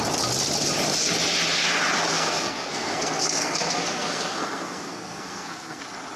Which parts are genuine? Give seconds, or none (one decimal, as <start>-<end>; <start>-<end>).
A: 0.0-2.1; 5.8-6.2